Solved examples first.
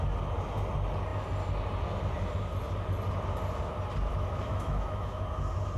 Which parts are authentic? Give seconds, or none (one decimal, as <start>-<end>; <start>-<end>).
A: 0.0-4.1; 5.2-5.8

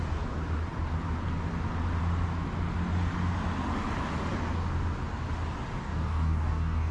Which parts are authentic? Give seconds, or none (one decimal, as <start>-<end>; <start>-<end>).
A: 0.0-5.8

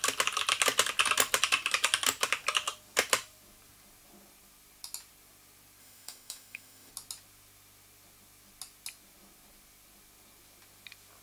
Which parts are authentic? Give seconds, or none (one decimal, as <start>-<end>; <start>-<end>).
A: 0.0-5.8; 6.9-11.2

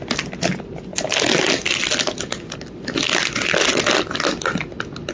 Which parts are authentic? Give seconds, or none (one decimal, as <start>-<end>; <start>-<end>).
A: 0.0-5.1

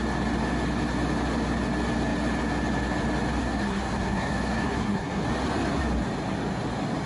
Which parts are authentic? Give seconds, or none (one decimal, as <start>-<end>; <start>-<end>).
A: 0.0-3.4; 5.2-7.1